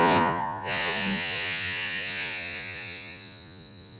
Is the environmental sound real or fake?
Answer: fake